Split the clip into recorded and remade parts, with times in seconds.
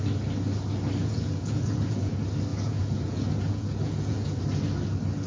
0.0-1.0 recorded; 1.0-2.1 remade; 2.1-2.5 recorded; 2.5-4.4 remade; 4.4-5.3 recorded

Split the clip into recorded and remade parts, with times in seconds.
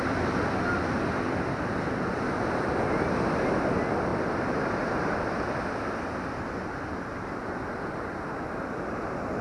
0.0-9.4 recorded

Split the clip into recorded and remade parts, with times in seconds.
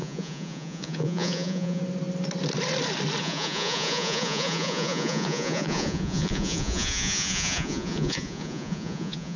0.0-1.8 remade; 1.8-3.2 recorded; 3.2-9.4 remade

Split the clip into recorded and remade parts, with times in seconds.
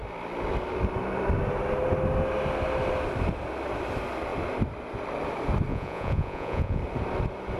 0.0-5.7 recorded; 5.7-6.8 remade; 6.8-7.6 recorded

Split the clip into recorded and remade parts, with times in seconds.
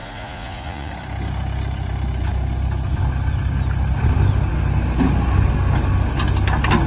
0.0-0.9 remade; 0.9-6.9 recorded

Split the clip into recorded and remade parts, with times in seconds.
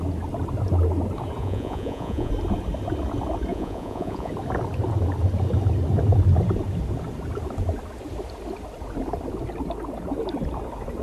0.0-1.4 recorded; 1.4-2.3 remade; 2.3-3.5 recorded; 3.5-4.3 remade; 4.3-11.0 recorded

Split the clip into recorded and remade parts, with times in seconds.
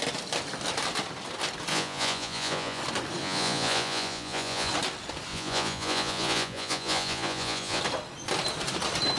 0.0-1.7 recorded; 1.7-2.8 remade; 2.8-3.2 recorded; 3.2-4.7 remade; 4.7-5.3 recorded; 5.3-7.8 remade; 7.8-9.2 recorded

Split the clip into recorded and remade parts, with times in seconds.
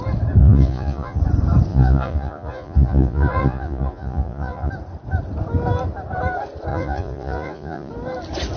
0.0-0.4 recorded; 0.4-1.2 remade; 1.2-1.7 recorded; 1.7-4.7 remade; 4.7-6.7 recorded; 6.7-7.9 remade; 7.9-8.6 recorded